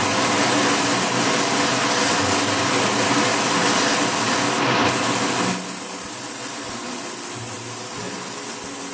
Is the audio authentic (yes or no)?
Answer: yes